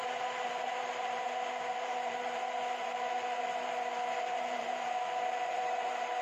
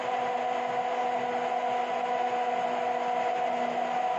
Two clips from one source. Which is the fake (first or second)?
first